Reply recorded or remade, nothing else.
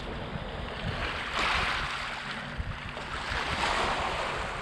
recorded